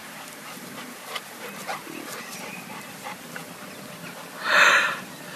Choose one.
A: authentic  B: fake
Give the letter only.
A